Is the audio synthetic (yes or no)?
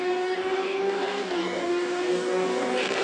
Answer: yes